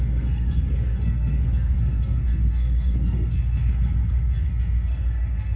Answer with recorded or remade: remade